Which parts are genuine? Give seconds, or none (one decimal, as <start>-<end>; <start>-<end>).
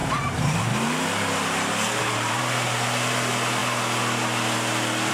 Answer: 2.4-5.1